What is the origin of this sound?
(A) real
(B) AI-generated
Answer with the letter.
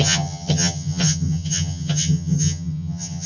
B